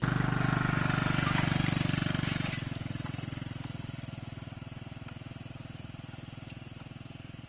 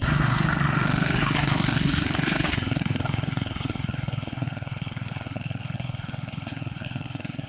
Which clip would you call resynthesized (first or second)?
second